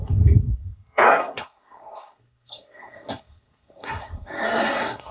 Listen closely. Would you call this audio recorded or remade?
remade